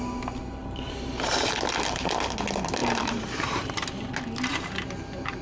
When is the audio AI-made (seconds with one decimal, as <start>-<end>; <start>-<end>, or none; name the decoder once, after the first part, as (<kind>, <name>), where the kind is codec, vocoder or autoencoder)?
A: 0.6-1.5 (vocoder, BigVGAN v2); 2.8-3.7; 4.5-5.4